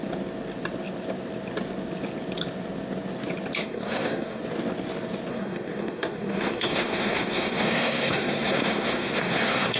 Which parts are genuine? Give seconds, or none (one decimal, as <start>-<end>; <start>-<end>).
0.0-3.6; 4.4-5.3